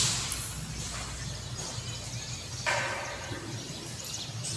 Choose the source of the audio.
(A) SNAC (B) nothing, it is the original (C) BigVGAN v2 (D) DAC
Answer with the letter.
B